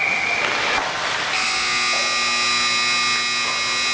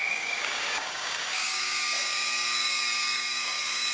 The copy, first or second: second